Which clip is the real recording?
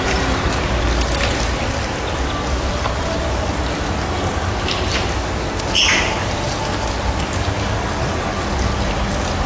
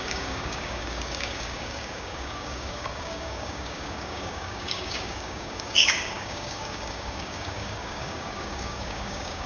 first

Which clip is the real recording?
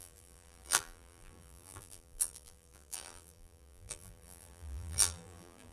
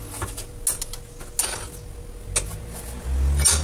second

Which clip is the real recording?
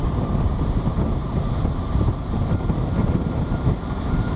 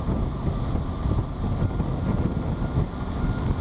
second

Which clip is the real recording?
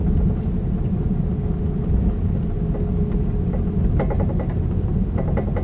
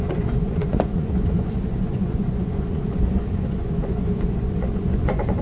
first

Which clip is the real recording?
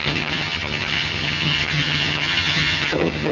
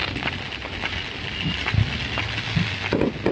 second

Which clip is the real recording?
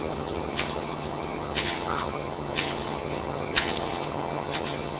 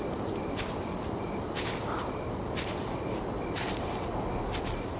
second